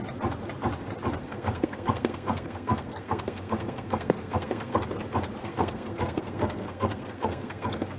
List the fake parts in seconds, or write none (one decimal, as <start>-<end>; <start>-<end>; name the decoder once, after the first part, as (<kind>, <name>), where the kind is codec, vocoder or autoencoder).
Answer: 1.2-4.8 (codec, SNAC); 5.4-8.0